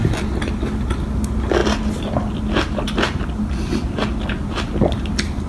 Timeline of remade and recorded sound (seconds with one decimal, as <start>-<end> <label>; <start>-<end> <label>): 0.0-5.5 recorded